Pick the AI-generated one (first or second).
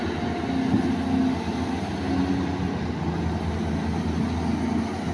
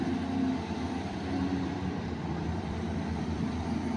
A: second